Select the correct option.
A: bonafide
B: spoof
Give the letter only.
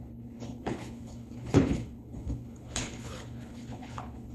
B